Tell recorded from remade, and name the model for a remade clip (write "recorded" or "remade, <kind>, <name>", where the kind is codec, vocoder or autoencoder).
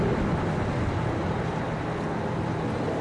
recorded